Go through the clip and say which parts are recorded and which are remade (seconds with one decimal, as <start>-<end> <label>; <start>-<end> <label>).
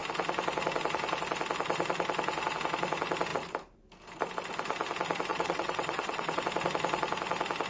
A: 0.0-5.3 recorded; 5.3-6.4 remade; 6.4-7.7 recorded